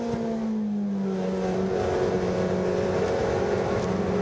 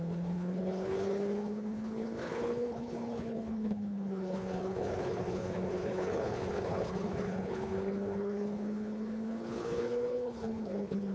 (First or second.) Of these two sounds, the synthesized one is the second